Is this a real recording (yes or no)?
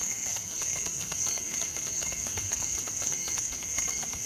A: no